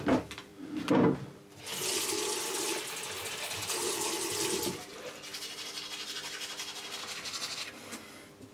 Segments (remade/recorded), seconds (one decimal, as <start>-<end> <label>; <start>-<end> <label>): 0.0-0.5 recorded; 0.5-1.6 remade; 1.6-8.5 recorded